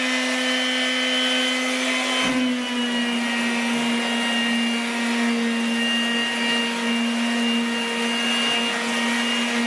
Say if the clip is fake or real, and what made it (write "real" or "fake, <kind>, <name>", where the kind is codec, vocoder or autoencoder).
real